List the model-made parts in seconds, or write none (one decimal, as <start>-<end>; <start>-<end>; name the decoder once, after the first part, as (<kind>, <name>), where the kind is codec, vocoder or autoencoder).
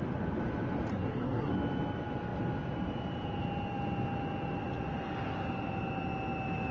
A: 0.9-1.5 (codec, SNAC)